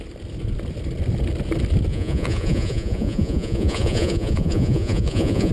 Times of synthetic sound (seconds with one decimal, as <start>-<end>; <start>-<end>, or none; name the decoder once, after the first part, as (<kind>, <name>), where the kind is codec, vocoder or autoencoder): 1.9-5.5 (vocoder, Vocos)